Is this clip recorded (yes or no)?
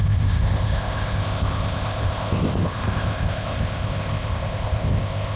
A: no